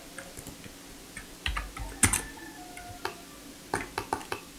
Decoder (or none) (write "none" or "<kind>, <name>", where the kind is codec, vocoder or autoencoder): none